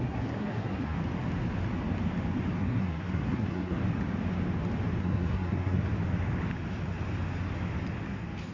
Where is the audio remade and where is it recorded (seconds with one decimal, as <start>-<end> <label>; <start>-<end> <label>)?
0.0-1.0 remade; 1.0-2.6 recorded; 2.6-3.8 remade; 3.8-5.0 recorded; 5.0-5.8 remade; 5.8-8.5 recorded